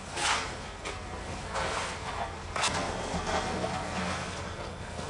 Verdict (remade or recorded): remade